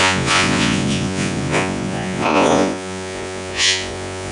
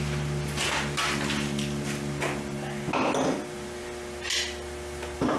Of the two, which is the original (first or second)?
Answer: second